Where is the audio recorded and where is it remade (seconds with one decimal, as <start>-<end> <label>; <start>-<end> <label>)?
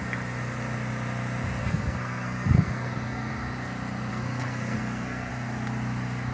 0.0-1.6 recorded; 1.6-3.3 remade; 3.3-4.1 recorded; 4.1-5.3 remade; 5.3-6.3 recorded